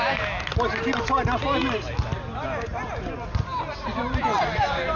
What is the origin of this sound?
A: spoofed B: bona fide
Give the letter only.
B